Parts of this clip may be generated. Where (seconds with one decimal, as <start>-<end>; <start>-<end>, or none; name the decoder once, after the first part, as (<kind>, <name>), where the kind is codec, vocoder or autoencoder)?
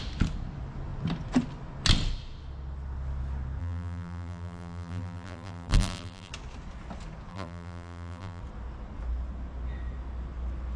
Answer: 3.6-6.3 (vocoder, BigVGAN v2); 7.3-8.4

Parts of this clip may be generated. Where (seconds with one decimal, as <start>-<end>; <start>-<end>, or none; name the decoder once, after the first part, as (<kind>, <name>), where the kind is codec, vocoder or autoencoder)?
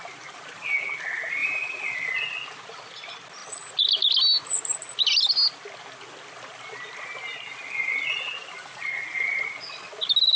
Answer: 1.4-2.1 (vocoder, BigVGAN v2); 8.4-8.9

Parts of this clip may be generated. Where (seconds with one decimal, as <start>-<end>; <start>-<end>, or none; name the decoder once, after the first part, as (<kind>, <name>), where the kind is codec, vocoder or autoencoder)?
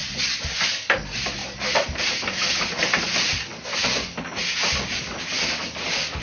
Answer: 1.4-3.8 (vocoder, BigVGAN v2)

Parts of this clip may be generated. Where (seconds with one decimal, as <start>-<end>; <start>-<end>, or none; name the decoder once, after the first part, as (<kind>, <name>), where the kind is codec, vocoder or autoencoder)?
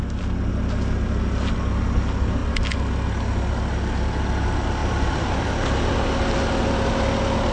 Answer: 4.8-5.4 (vocoder, BigVGAN v2)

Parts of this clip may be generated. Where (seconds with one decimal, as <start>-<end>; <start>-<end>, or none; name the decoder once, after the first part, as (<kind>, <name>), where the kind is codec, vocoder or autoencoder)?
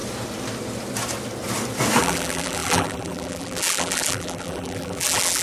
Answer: 2.0-5.4 (vocoder, BigVGAN v2)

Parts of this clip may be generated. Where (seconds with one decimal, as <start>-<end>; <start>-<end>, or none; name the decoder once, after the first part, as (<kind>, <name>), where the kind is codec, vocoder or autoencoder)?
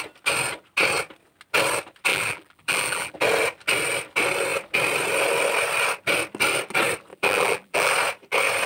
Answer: 2.1-3.1 (vocoder, BigVGAN v2); 7.1-7.9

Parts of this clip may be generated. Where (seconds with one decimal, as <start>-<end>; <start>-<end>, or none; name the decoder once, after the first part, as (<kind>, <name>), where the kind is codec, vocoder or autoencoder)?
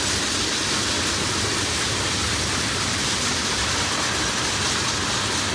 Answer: none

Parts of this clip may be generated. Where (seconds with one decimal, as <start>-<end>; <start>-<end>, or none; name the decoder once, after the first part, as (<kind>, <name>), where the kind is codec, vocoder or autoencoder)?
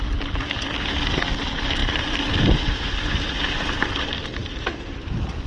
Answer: 1.8-3.6 (vocoder, BigVGAN v2); 4.4-5.1